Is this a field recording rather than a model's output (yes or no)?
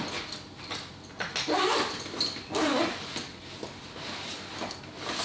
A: yes